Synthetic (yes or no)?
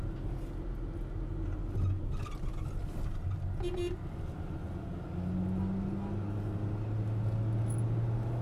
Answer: no